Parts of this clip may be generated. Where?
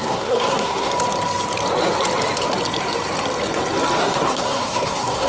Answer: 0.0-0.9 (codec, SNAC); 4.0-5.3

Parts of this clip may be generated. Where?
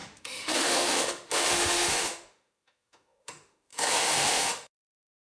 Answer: 0.0-5.4 (autoencoder, DAC-VAE)